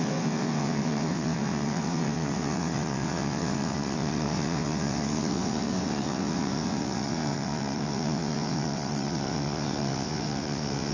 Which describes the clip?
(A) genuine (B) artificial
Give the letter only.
B